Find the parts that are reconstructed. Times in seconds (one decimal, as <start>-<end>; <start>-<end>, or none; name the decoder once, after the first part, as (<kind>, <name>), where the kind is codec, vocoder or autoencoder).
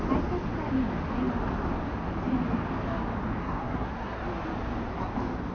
3.4-4.2 (codec, SNAC)